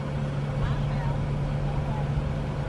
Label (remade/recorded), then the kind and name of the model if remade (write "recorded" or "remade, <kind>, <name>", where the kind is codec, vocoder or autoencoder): recorded